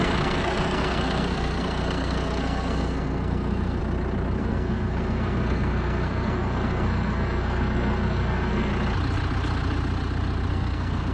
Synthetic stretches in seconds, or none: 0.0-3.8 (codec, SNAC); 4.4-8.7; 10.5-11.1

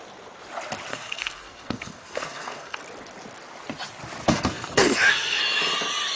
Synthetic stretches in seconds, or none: 0.9-2.8 (codec, SNAC); 4.2-5.4

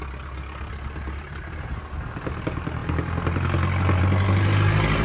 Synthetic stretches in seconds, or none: none